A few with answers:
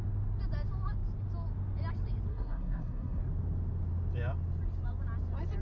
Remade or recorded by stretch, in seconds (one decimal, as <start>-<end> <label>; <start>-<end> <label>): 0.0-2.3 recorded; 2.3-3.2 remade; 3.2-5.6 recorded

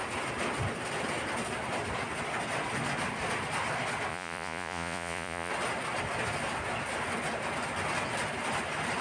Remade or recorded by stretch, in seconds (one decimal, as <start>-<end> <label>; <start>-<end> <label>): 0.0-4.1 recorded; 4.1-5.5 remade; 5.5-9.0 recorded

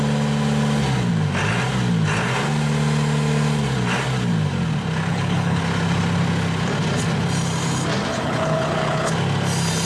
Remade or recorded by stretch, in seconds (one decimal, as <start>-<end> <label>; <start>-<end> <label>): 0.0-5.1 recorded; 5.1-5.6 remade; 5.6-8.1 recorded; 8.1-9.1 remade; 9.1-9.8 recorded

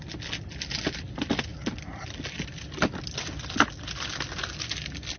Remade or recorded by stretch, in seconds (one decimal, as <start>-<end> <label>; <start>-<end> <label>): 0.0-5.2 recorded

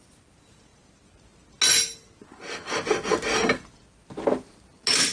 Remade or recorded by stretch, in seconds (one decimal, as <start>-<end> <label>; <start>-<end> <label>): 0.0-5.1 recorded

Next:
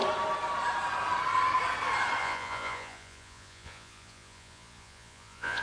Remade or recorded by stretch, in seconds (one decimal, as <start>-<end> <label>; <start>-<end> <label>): 0.0-2.2 recorded; 2.2-5.6 remade

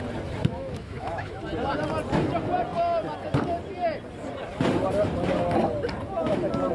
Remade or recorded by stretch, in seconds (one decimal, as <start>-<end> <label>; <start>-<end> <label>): 0.0-0.5 recorded; 0.5-1.4 remade; 1.4-6.7 recorded

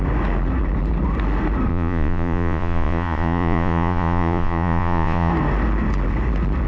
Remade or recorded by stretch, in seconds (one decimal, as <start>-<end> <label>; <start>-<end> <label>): 0.0-1.7 recorded; 1.7-5.3 remade; 5.3-6.7 recorded